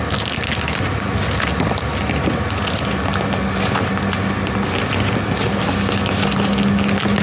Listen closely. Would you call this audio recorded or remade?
recorded